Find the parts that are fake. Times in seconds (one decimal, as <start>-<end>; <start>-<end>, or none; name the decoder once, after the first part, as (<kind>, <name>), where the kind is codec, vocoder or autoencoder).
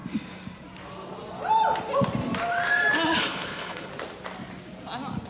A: 3.2-3.9 (codec, HILCodec)